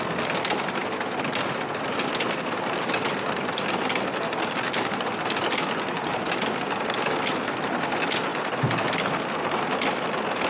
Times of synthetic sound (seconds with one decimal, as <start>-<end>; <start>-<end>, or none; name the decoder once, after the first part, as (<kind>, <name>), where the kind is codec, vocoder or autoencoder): none